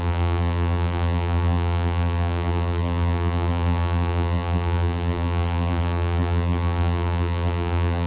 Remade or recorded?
remade